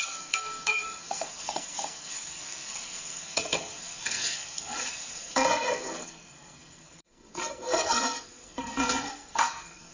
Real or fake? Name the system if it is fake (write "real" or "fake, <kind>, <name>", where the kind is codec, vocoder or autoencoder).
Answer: fake, codec, SNAC